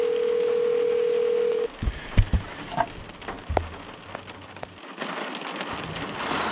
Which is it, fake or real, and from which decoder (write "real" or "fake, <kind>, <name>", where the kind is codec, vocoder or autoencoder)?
real